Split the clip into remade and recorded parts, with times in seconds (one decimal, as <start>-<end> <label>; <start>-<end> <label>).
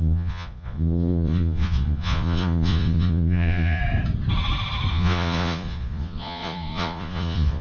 0.0-3.8 remade; 3.8-4.9 recorded; 4.9-7.6 remade